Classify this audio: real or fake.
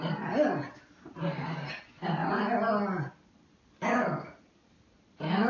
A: real